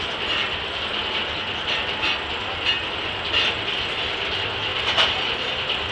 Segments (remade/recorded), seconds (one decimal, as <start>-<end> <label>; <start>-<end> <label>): 0.0-5.9 recorded